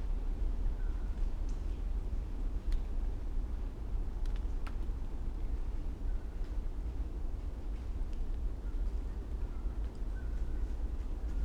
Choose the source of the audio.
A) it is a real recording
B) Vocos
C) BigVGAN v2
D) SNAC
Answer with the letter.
A